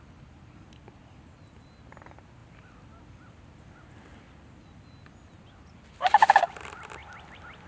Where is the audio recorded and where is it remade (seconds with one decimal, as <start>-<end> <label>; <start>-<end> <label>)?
0.0-7.7 recorded